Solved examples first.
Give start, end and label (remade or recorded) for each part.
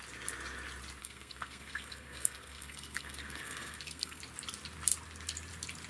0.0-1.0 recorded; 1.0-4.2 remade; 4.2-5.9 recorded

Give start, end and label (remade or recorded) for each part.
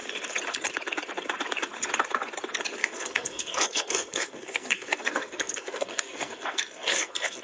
0.0-2.8 recorded; 2.8-7.4 remade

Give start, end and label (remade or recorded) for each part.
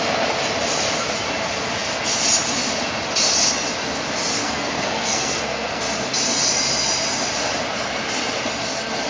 0.0-4.4 recorded; 4.4-5.8 remade; 5.8-9.1 recorded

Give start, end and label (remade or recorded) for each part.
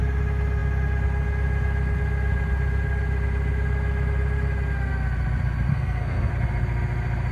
0.0-5.7 recorded; 5.7-6.3 remade; 6.3-7.3 recorded